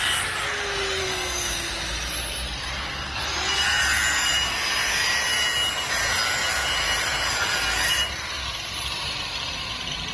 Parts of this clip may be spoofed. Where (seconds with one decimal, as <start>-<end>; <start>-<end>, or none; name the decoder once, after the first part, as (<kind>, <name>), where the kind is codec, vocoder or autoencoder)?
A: 1.0-1.7 (codec, SNAC)